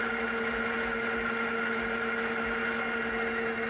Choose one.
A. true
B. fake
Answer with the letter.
A